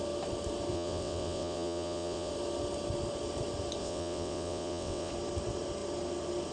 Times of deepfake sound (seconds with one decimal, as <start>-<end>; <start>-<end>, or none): 0.7-2.3; 3.8-5.1